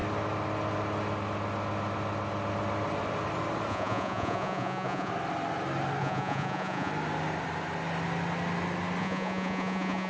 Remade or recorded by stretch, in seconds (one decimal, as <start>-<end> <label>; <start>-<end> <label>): 0.0-3.7 recorded; 3.7-5.1 remade; 5.1-6.0 recorded; 6.0-6.9 remade; 6.9-9.0 recorded; 9.0-10.1 remade